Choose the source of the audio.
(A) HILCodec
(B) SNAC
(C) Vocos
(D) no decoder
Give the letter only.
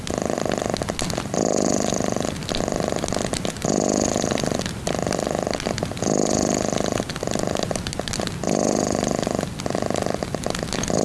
D